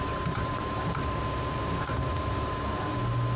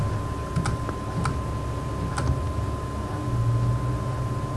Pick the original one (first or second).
second